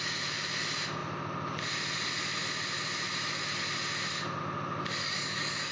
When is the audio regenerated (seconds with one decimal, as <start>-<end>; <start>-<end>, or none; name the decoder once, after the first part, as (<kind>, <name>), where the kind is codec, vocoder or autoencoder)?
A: 5.0-5.7 (codec, DAC)